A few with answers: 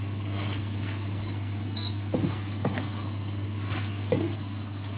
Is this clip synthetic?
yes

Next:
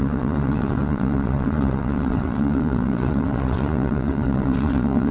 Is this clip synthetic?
yes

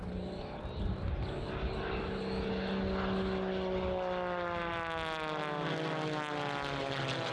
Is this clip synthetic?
no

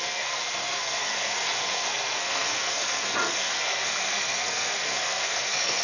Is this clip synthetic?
yes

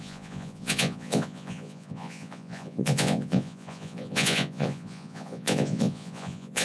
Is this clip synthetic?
yes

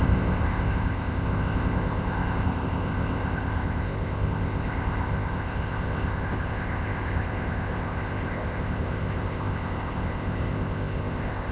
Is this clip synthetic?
yes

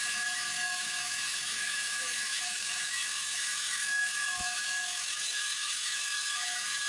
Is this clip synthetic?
yes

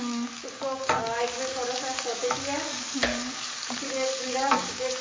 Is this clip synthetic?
yes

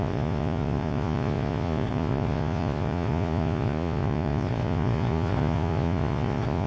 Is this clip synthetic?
yes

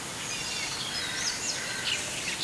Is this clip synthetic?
no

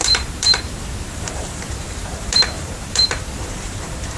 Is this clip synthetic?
yes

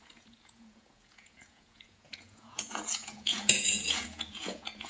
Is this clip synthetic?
yes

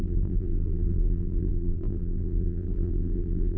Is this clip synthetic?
yes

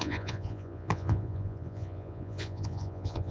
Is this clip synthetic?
yes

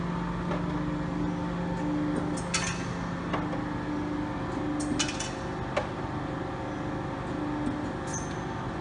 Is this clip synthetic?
no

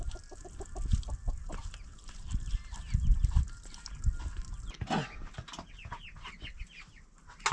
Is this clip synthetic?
no